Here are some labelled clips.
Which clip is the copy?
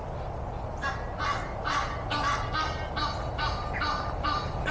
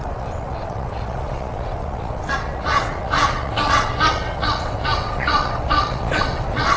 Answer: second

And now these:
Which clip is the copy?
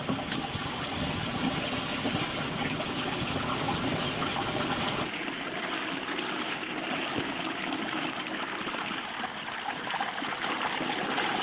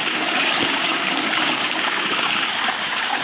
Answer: second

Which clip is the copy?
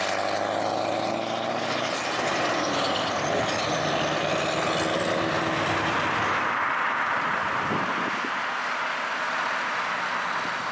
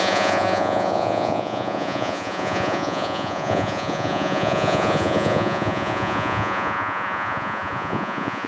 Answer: second